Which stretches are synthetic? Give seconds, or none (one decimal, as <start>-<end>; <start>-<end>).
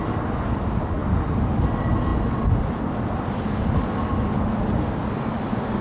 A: none